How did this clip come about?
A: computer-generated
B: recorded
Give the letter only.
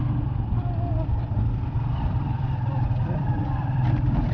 A